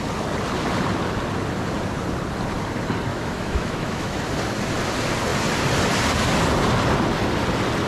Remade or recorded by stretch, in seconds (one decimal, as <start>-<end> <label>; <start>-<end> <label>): 0.0-3.1 recorded; 3.1-4.2 remade; 4.2-7.9 recorded